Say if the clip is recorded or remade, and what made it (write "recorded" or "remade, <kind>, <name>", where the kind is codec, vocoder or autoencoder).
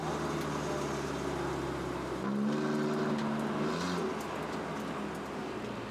recorded